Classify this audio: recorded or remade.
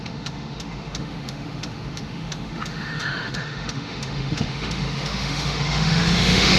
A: remade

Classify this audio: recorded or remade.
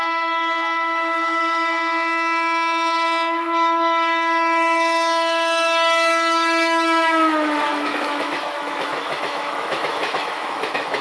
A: remade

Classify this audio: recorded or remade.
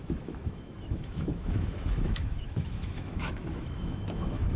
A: remade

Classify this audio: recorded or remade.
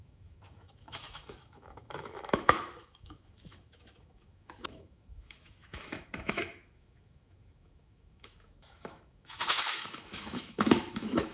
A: remade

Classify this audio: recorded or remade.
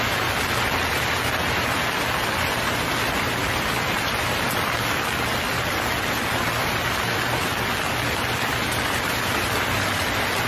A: recorded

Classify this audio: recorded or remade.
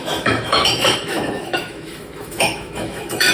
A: remade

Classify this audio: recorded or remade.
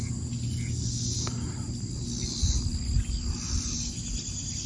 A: recorded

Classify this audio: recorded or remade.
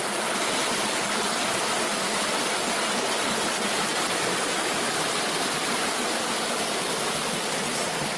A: recorded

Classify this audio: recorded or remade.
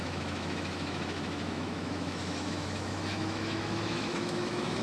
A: remade